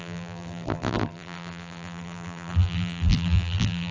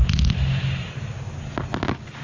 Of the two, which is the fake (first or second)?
first